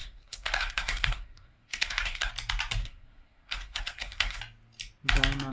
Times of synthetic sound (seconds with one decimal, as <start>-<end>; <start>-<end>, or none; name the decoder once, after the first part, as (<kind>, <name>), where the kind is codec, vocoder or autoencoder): 0.0-2.3 (codec, SNAC); 2.8-4.4